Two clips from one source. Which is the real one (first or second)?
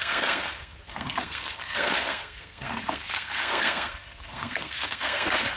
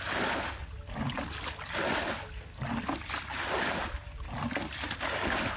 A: second